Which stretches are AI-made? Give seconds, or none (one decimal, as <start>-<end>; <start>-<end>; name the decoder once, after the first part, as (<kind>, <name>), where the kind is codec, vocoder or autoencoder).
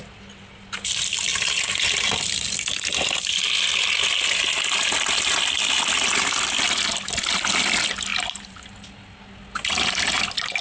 1.3-2.1 (vocoder, BigVGAN v2); 8.1-8.6